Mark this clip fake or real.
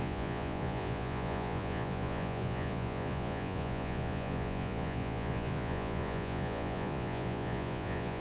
fake